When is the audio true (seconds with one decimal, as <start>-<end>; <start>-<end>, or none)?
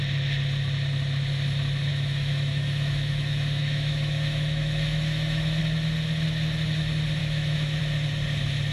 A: 0.0-1.9; 5.6-7.2; 7.8-8.7